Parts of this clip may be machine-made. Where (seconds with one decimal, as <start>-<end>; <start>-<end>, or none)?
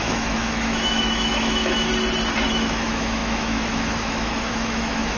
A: 0.0-1.9; 2.5-5.2